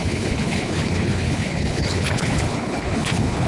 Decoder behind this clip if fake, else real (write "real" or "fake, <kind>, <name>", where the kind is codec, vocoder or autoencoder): fake, codec, HILCodec